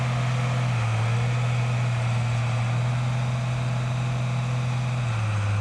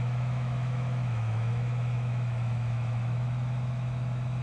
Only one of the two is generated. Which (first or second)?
second